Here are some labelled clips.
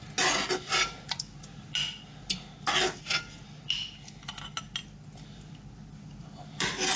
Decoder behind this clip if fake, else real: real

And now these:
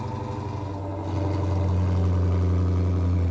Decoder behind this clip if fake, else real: real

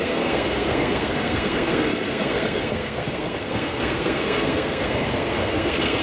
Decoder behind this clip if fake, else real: fake, codec, SNAC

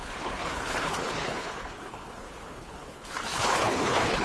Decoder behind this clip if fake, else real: fake, codec, HILCodec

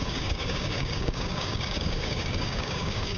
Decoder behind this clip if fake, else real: fake, codec, DAC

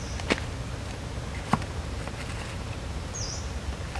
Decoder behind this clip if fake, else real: real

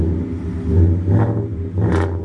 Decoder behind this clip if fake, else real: real